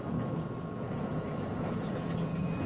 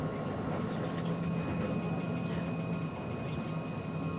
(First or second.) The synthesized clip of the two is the first